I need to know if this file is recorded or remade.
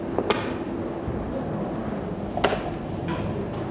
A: recorded